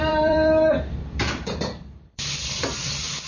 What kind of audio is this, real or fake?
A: fake